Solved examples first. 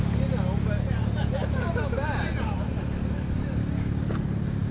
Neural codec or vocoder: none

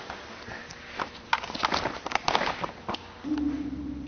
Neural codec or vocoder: none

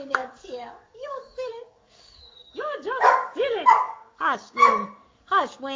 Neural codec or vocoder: codec, DAC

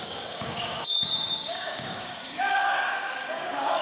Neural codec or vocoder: codec, DAC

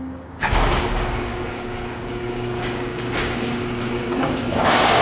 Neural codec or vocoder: codec, DAC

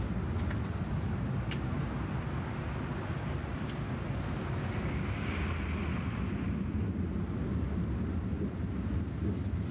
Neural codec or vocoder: none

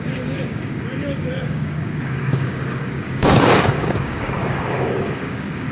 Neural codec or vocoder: codec, DAC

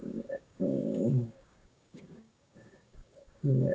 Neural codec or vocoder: codec, DAC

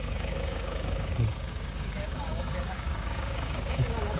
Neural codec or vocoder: codec, DAC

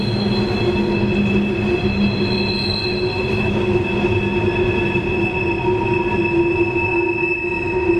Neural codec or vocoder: none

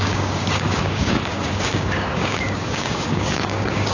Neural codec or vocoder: codec, DAC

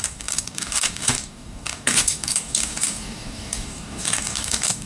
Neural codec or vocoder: codec, DAC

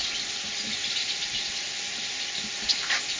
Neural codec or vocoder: none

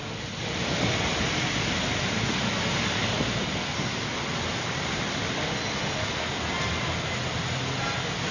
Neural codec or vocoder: none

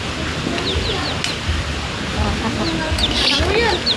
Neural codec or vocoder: none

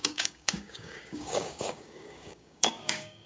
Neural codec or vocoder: codec, DAC